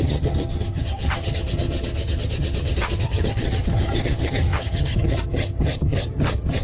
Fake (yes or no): yes